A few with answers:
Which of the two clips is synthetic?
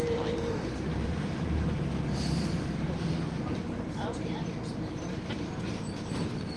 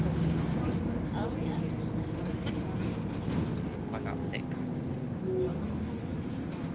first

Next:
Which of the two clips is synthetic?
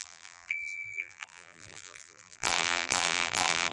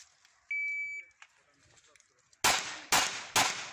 first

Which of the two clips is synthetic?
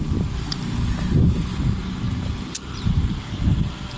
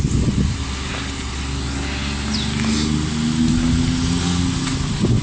first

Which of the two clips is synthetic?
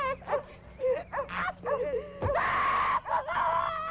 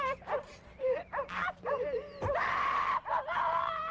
second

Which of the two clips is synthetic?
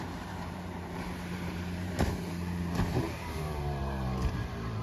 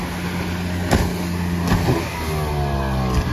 first